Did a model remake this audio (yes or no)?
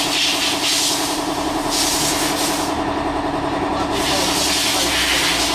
no